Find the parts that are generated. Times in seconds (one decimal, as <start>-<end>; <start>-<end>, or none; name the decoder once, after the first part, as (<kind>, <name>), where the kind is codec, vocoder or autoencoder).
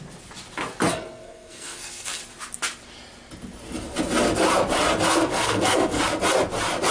0.9-2.2 (codec, SNAC); 5.1-6.0